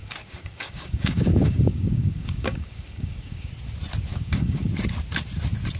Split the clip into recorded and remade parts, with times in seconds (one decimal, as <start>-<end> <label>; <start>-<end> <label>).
0.0-3.5 remade; 3.5-4.1 recorded; 4.1-4.7 remade; 4.7-5.8 recorded